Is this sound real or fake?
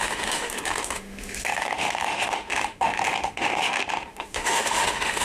fake